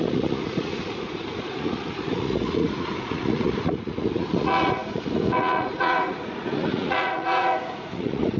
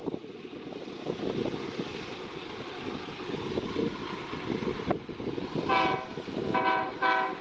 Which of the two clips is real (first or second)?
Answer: second